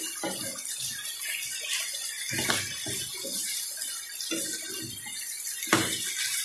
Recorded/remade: recorded